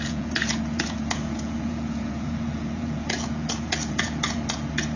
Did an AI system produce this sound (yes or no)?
yes